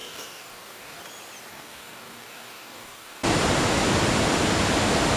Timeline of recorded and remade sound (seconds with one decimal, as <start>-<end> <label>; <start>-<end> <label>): 0.0-1.0 remade; 1.0-1.5 recorded; 1.5-3.2 remade; 3.2-5.2 recorded

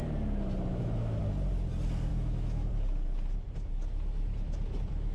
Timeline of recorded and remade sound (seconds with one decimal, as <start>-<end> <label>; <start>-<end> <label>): 0.0-0.7 recorded; 0.7-1.2 remade; 1.2-2.1 recorded; 2.1-2.7 remade; 2.7-5.1 recorded

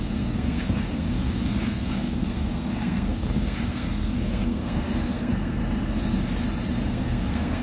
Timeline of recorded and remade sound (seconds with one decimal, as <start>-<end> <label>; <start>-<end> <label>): 0.0-5.6 remade; 5.6-6.9 recorded; 6.9-7.6 remade

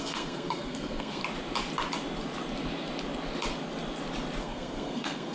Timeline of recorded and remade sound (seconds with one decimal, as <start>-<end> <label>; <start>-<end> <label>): 0.0-1.2 remade; 1.2-4.4 recorded; 4.4-5.3 remade

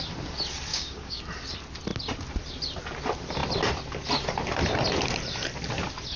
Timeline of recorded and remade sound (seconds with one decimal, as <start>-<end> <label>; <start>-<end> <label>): 0.0-0.7 recorded; 0.7-1.2 remade; 1.2-6.2 recorded

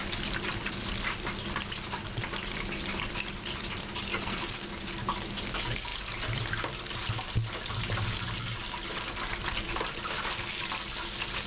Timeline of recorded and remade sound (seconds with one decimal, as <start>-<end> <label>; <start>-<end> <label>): 0.0-4.1 recorded; 4.1-4.7 remade; 4.7-11.5 recorded

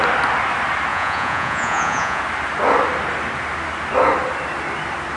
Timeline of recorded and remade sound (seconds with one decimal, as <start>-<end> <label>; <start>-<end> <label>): 0.0-0.9 recorded; 0.9-2.2 remade; 2.2-5.2 recorded